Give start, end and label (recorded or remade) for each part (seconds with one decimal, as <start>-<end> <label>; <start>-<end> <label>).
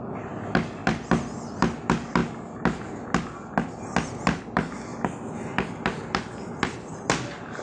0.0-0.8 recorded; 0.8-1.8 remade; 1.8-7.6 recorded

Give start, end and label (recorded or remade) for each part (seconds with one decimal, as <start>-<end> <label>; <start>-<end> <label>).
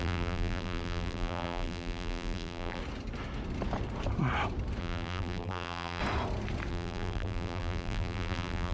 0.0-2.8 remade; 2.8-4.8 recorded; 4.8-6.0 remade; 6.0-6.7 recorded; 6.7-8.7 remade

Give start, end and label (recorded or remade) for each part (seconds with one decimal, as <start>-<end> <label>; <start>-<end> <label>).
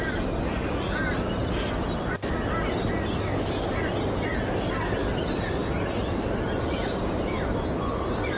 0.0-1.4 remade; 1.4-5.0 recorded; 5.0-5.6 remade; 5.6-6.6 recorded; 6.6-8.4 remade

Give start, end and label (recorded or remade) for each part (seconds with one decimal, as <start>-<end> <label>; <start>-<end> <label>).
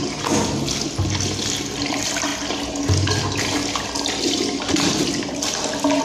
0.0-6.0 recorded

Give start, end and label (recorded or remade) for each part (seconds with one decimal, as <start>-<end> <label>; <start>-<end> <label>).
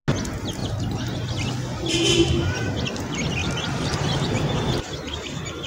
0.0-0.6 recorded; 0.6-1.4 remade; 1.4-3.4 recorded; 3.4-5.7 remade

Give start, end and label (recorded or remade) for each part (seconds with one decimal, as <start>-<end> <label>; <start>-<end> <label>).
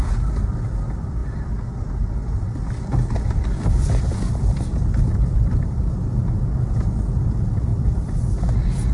0.0-7.7 recorded; 7.7-8.4 remade; 8.4-8.9 recorded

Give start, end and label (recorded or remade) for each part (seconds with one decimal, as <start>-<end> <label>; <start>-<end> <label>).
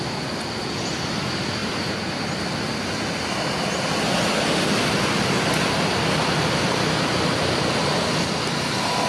0.0-1.6 recorded; 1.6-2.1 remade; 2.1-9.1 recorded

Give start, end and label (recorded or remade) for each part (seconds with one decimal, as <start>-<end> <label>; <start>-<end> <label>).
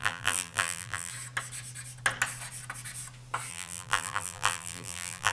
0.0-1.1 remade; 1.1-3.5 recorded; 3.5-5.3 remade